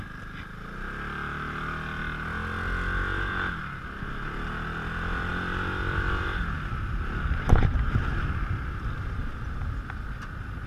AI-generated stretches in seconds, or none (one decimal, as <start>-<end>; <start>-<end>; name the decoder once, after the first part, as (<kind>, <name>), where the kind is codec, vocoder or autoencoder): none